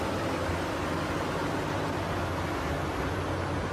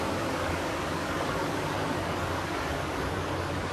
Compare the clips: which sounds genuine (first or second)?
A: first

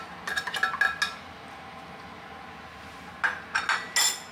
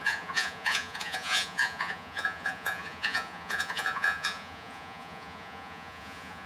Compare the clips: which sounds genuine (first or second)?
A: first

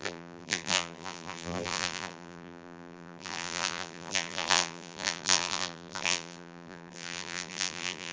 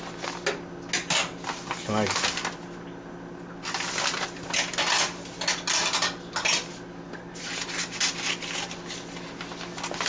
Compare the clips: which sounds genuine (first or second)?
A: second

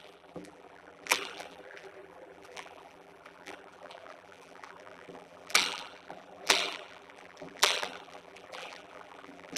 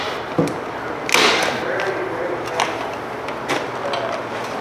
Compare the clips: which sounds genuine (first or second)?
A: second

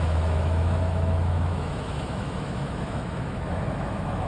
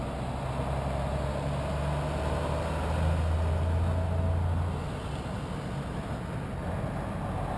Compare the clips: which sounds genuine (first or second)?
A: second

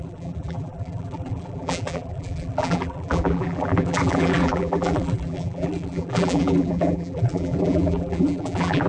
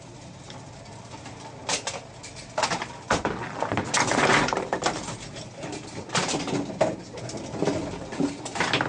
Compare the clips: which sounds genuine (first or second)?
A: second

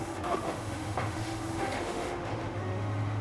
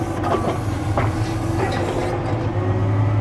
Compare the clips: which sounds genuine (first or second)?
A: second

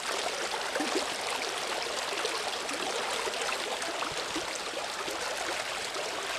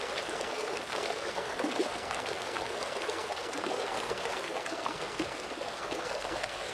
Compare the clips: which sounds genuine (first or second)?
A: first